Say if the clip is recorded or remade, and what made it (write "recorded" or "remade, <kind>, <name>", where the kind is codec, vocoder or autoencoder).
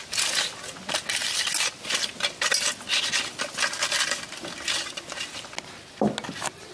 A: recorded